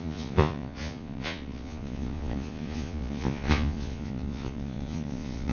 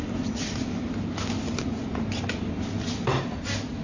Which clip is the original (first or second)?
second